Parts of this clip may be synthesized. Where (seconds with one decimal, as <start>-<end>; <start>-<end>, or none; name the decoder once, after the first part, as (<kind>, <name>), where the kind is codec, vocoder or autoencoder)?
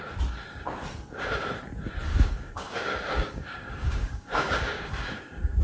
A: 2.1-5.6 (codec, DAC)